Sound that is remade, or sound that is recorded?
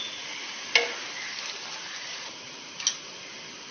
recorded